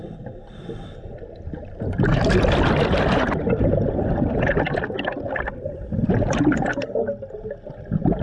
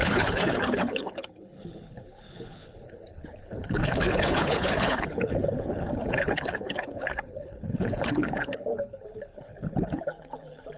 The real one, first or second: first